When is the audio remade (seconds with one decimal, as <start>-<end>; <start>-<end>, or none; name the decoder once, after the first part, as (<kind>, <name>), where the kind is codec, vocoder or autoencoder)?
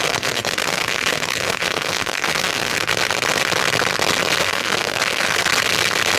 0.0-2.9 (codec, SNAC); 4.4-5.5